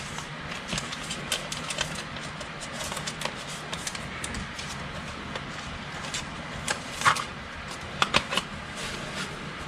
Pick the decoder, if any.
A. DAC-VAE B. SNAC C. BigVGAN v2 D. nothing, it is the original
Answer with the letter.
D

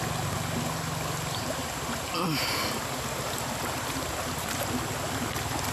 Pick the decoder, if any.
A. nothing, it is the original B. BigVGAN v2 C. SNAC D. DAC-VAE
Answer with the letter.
A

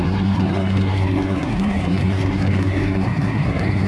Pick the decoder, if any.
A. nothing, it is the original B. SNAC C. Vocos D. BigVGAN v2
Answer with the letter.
B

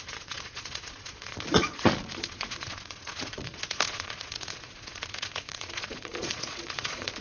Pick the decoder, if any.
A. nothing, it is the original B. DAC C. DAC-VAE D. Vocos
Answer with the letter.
D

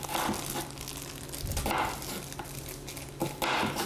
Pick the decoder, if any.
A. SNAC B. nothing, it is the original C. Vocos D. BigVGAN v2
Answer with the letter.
B